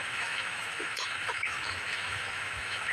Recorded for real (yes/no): no